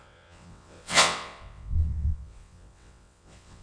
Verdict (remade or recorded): remade